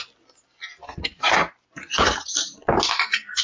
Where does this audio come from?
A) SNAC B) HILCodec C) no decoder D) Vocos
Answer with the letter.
C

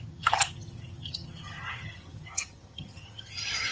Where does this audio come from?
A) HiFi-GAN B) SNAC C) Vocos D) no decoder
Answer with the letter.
A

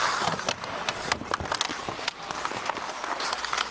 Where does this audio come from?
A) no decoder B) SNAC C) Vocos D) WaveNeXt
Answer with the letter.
A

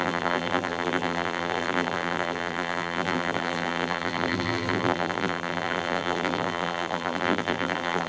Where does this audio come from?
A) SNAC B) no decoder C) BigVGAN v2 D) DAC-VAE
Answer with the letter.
C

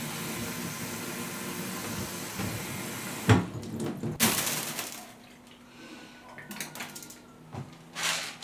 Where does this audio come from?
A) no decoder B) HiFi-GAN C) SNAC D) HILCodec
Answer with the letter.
A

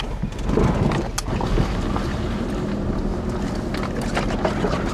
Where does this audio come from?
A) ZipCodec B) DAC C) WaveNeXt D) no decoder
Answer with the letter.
D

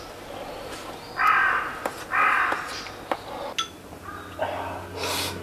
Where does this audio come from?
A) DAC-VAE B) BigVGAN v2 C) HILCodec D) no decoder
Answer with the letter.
D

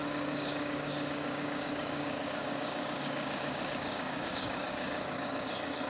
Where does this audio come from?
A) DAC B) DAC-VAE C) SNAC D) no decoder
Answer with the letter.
A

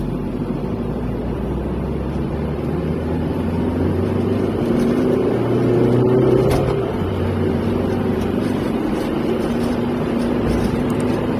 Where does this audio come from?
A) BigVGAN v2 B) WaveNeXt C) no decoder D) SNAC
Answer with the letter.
A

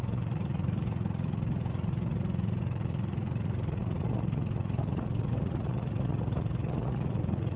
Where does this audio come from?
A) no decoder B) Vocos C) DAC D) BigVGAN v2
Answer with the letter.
B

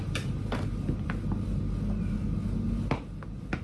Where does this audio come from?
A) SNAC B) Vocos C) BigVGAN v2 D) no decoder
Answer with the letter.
D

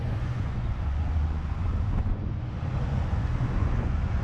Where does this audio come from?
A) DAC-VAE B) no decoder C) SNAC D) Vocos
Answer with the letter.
D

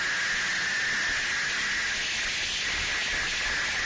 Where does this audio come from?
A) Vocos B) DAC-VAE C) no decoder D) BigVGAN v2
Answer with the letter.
C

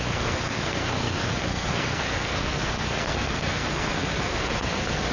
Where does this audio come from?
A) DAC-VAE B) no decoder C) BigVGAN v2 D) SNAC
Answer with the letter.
D